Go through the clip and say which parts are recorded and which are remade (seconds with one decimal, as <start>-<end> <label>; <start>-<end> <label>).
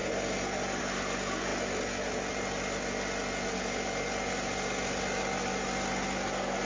0.0-6.6 recorded